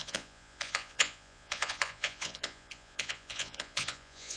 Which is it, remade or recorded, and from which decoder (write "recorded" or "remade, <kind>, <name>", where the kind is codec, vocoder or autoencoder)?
remade, vocoder, Vocos